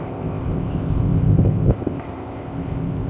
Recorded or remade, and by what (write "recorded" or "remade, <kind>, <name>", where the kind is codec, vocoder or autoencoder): remade, codec, ZipCodec